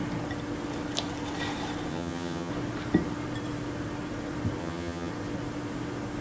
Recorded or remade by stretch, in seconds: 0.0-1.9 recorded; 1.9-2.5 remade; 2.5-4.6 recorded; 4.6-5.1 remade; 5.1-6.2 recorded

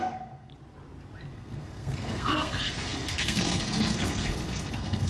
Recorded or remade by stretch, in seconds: 0.0-0.5 remade; 0.5-1.3 recorded; 1.3-5.1 remade

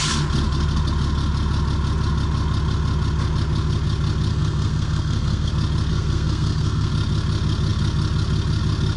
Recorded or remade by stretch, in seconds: 0.0-4.3 recorded; 4.3-5.5 remade; 5.5-5.9 recorded; 5.9-6.9 remade; 6.9-9.0 recorded

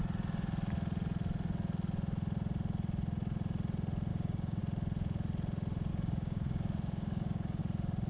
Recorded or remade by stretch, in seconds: 0.0-4.1 recorded; 4.1-4.6 remade; 4.6-5.9 recorded; 5.9-7.6 remade; 7.6-8.1 recorded